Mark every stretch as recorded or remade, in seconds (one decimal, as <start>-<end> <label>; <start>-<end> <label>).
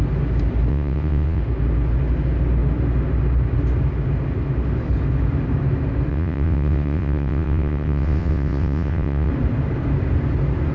0.0-0.7 recorded; 0.7-1.4 remade; 1.4-6.1 recorded; 6.1-9.3 remade; 9.3-10.7 recorded